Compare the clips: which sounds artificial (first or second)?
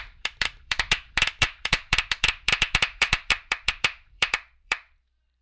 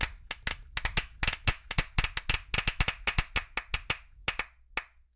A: first